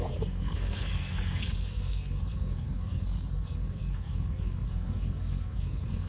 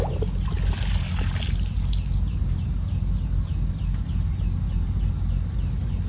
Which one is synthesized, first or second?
first